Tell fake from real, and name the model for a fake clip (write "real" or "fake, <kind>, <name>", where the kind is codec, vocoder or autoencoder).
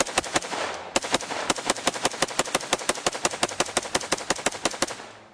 fake, vocoder, BigVGAN v2